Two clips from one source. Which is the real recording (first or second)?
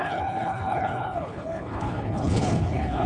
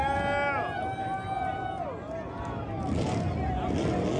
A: second